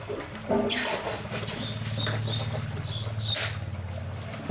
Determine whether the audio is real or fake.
real